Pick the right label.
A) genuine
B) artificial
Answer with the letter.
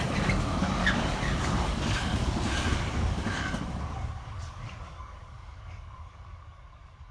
B